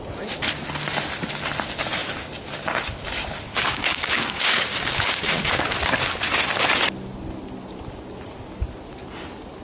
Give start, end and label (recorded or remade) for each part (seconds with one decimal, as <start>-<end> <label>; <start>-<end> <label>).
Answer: 0.0-3.5 recorded; 3.5-5.6 remade; 5.6-9.6 recorded